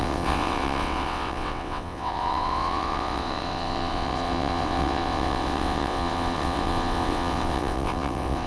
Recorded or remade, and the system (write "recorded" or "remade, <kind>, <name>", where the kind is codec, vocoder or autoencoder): remade, vocoder, WaveNeXt